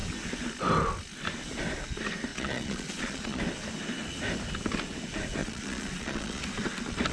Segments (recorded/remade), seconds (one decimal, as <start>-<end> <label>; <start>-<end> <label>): 0.0-2.3 recorded; 2.3-3.4 remade; 3.4-5.4 recorded; 5.4-6.4 remade; 6.4-7.1 recorded